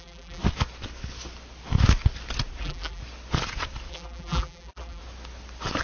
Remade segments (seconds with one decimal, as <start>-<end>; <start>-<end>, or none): 0.0-0.4; 2.6-3.0; 3.9-5.0